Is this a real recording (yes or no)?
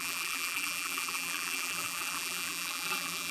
no